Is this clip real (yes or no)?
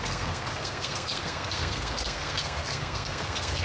no